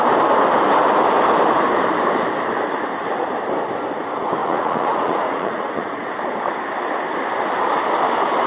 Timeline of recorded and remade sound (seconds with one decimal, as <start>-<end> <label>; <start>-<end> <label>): 0.0-4.4 recorded; 4.4-6.1 remade; 6.1-8.5 recorded